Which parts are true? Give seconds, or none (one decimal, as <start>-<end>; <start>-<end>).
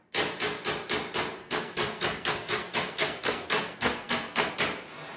0.0-1.4; 4.5-5.2